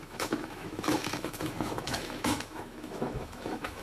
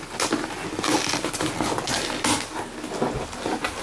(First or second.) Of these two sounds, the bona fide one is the second